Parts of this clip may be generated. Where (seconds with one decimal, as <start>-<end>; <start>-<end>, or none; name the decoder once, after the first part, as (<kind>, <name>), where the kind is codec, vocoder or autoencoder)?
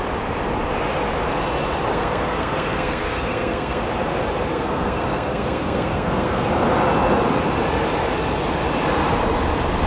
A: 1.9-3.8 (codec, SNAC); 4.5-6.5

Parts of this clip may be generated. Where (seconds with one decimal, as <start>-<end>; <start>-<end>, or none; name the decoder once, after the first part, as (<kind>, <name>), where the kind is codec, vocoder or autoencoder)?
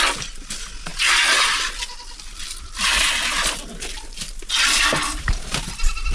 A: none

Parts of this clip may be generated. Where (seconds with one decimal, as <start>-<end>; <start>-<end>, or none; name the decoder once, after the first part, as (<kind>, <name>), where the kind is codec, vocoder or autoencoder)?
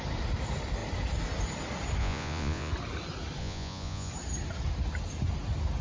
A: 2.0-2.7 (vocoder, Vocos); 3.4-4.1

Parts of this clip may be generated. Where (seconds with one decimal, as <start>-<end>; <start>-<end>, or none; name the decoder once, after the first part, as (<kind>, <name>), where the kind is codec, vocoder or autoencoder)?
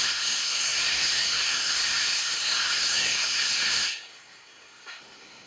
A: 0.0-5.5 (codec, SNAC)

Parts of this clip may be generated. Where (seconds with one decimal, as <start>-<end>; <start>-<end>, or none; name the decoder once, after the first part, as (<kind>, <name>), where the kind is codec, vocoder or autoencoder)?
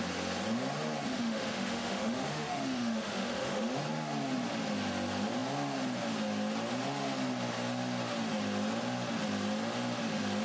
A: 1.1-3.8 (autoencoder, DAC-VAE)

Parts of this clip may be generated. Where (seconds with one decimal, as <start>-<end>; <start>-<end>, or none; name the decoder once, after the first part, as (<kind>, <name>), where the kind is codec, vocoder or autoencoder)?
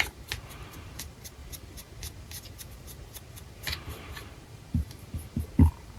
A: 0.0-1.4 (vocoder, BigVGAN v2); 3.9-6.0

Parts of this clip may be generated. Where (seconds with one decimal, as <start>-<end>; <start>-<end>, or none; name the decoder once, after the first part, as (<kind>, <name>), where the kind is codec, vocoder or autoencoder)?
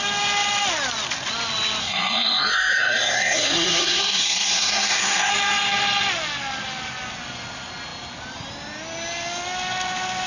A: 1.8-5.3 (codec, SNAC)